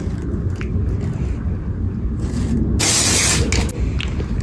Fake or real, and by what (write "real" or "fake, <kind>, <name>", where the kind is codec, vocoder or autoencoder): real